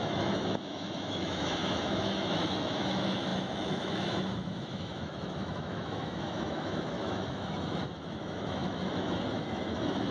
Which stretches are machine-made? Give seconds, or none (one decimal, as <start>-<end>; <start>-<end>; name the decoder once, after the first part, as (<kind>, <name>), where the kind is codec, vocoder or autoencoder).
0.0-10.1 (autoencoder, DAC-VAE)